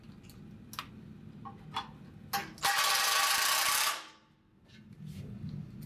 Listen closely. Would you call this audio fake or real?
real